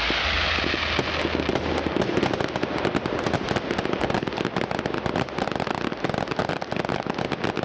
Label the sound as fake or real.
real